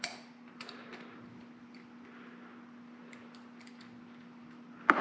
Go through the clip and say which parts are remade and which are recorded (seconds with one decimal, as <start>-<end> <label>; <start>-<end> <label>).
0.0-0.9 remade; 0.9-3.0 recorded; 3.0-5.0 remade